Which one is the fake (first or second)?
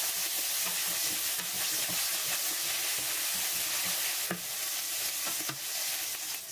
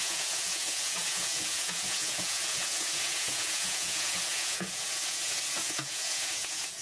second